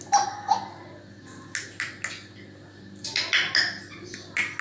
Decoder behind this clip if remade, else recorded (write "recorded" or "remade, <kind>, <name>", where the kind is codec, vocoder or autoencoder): recorded